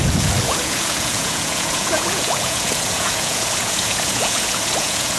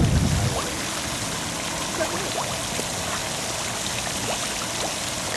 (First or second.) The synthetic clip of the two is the first